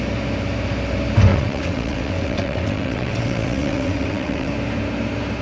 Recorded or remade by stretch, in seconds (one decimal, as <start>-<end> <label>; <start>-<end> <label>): 0.0-1.3 recorded; 1.3-4.5 remade; 4.5-5.4 recorded